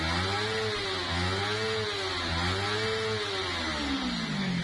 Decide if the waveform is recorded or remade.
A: recorded